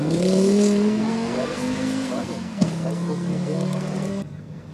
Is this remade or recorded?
remade